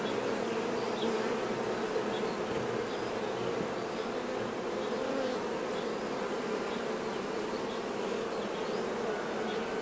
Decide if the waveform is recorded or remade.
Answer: recorded